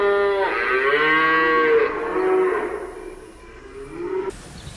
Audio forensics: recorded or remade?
recorded